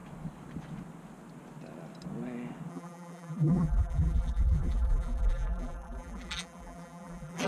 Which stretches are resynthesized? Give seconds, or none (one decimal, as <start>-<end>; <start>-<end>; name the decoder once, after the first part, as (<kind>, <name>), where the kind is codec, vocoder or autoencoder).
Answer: 2.7-7.5 (vocoder, BigVGAN v2)